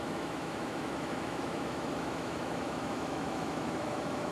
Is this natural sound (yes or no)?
no